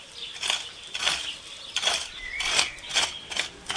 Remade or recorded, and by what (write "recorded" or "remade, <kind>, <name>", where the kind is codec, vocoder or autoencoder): recorded